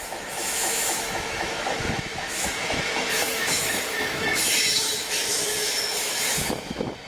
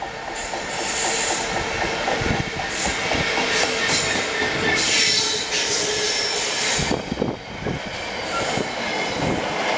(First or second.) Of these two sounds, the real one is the second